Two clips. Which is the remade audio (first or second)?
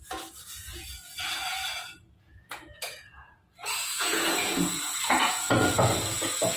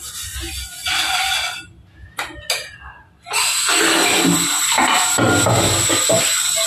first